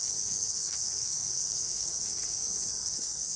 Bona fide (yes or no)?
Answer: no